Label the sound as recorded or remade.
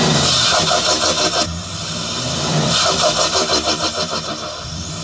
remade